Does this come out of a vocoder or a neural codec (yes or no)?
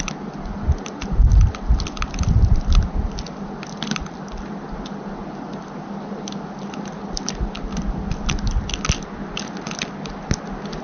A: no